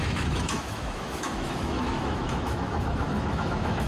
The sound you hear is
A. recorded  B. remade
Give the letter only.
B